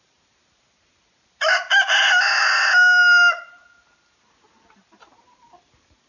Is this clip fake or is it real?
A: real